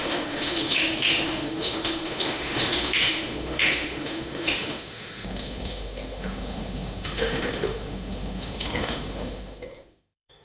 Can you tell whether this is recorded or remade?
remade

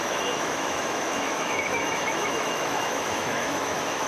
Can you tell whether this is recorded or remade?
remade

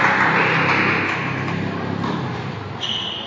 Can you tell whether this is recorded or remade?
recorded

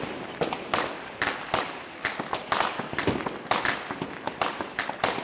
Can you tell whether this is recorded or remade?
recorded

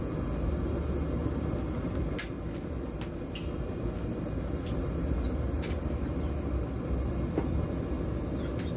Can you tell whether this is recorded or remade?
recorded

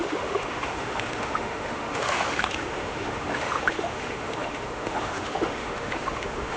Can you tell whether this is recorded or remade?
remade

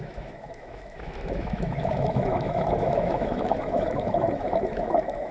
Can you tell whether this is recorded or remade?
remade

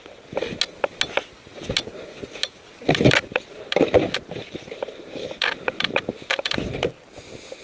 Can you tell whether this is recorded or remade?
recorded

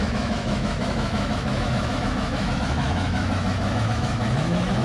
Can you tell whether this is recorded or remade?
remade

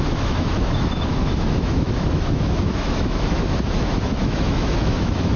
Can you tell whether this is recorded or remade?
remade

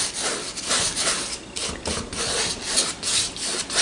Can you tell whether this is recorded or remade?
recorded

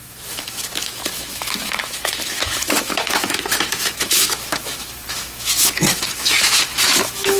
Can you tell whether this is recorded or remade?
remade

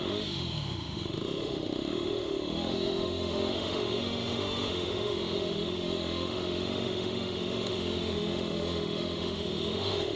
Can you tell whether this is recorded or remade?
remade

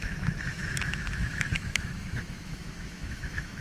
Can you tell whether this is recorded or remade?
remade